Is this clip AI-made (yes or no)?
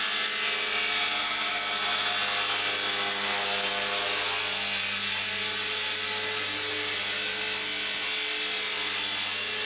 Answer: no